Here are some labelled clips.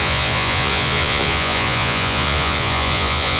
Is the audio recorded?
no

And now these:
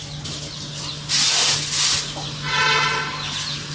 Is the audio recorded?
yes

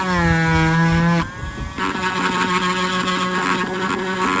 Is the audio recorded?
yes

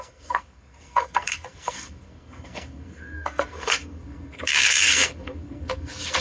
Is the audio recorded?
no